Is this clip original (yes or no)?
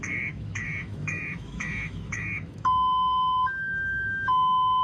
no